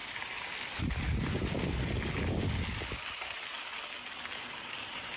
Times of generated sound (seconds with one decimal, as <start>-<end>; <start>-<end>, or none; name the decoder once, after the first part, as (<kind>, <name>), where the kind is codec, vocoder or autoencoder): 3.1-3.5 (vocoder, BigVGAN v2); 4.8-5.2